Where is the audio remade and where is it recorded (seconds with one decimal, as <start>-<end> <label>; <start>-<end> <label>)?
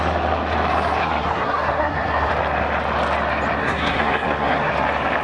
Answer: 0.0-1.0 recorded; 1.0-2.3 remade; 2.3-3.6 recorded; 3.6-4.7 remade; 4.7-5.2 recorded